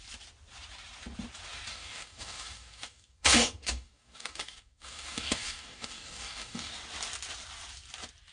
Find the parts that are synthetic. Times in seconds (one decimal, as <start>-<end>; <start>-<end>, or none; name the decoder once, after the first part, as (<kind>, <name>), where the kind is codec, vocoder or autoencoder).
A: 1.7-6.7 (codec, DAC)